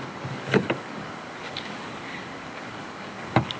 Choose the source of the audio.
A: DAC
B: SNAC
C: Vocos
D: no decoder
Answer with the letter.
A